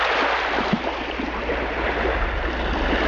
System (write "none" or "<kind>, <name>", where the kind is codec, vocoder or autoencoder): none